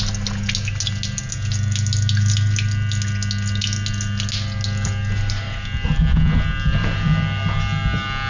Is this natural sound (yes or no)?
yes